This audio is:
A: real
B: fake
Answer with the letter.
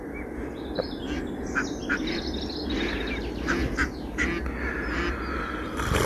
A